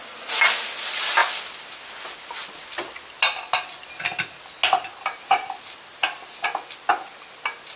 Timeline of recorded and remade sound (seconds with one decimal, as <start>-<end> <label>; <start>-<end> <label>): 0.0-7.8 recorded